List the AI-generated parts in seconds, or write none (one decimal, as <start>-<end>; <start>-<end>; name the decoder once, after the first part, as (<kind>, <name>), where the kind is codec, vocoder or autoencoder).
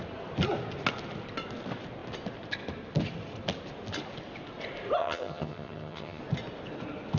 5.0-6.2 (vocoder, HiFi-GAN)